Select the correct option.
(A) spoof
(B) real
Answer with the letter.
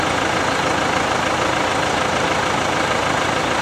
B